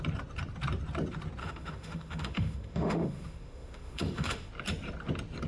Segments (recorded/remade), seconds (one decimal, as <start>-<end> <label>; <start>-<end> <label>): 0.0-1.4 recorded; 1.4-4.5 remade; 4.5-5.5 recorded